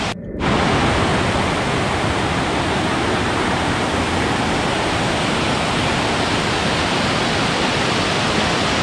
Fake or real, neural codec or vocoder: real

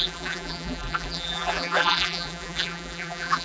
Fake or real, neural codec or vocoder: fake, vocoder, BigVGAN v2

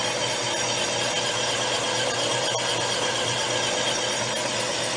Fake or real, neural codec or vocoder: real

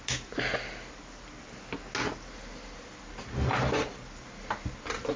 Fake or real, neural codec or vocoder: real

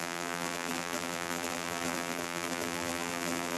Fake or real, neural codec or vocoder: fake, vocoder, BigVGAN v2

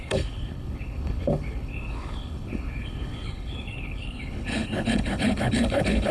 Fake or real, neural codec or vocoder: fake, codec, HILCodec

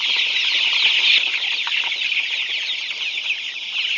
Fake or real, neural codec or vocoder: real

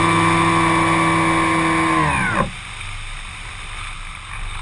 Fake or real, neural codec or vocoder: real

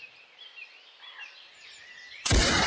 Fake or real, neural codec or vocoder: real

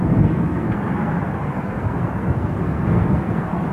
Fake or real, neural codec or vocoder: fake, codec, SNAC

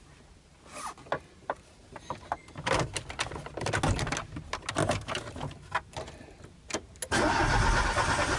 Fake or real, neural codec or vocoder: real